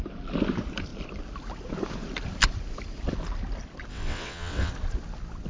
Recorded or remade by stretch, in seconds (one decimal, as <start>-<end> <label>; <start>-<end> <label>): 0.0-3.9 recorded; 3.9-4.7 remade; 4.7-5.5 recorded